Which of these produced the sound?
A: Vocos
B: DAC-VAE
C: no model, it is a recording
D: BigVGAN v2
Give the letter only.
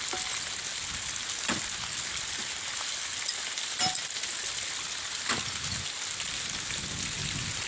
C